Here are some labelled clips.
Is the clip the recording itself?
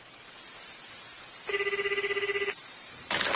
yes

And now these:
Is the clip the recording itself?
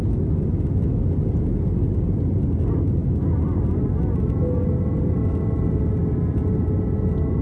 yes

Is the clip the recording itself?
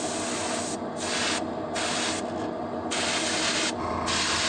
yes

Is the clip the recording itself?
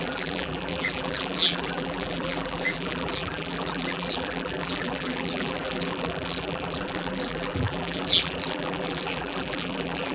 no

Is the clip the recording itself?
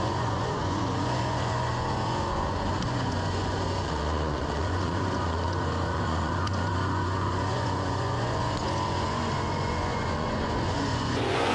no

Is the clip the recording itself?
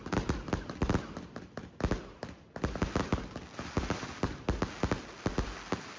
yes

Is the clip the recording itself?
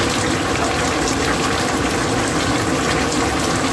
yes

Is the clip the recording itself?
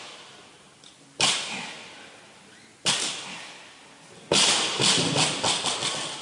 yes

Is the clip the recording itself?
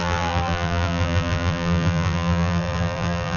no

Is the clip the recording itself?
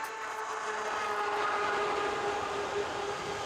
yes